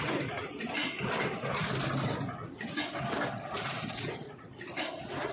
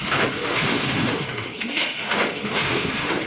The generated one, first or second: second